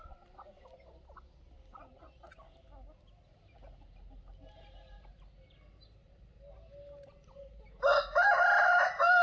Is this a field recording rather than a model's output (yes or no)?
yes